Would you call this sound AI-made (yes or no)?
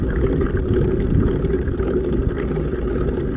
no